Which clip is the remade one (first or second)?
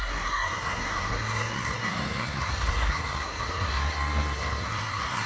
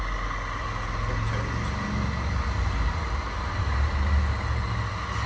first